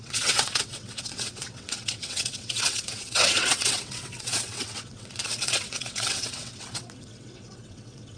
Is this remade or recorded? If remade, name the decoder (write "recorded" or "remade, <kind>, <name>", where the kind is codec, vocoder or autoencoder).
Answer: remade, vocoder, WaveNeXt